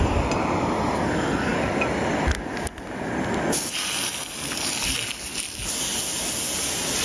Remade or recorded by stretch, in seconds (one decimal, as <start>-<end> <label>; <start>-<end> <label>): 0.0-7.0 recorded